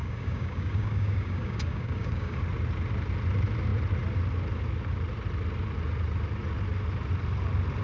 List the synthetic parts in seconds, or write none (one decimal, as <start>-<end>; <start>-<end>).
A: 0.0-2.4